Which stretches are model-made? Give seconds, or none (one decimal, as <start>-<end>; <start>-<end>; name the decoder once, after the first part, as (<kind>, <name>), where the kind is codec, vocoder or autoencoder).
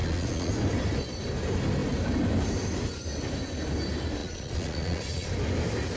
0.0-0.5 (vocoder, Vocos); 4.2-5.3